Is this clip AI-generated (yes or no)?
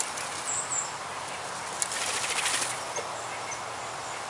no